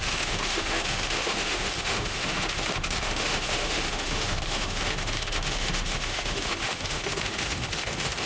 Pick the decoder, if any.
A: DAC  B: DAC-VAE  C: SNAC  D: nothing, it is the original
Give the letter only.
B